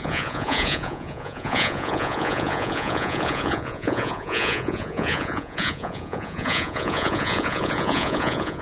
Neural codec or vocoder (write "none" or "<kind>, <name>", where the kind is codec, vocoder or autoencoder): vocoder, Vocos